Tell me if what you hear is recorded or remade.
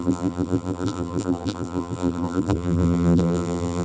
remade